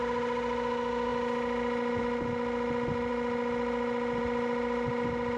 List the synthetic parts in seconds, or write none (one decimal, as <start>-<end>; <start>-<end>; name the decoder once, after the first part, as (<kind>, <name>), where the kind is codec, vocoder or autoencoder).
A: none